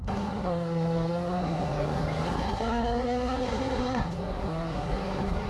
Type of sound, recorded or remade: remade